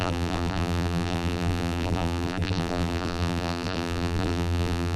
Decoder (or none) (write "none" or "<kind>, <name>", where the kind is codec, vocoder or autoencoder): vocoder, BigVGAN v2